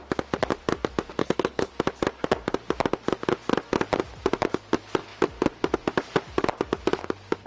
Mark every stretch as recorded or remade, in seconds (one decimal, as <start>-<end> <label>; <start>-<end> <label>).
0.0-1.2 recorded; 1.2-1.7 remade; 1.7-7.5 recorded